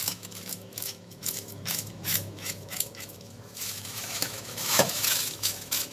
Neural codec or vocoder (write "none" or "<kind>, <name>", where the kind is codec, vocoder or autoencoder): autoencoder, DAC-VAE